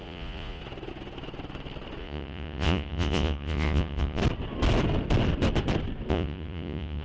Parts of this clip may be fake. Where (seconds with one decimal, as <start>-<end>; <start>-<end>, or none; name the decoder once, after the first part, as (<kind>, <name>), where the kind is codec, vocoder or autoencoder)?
0.0-0.6 (vocoder, Vocos); 2.0-4.2; 6.1-7.0